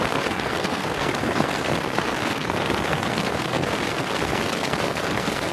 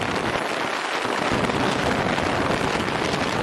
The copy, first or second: first